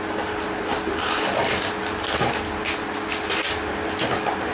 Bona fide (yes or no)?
yes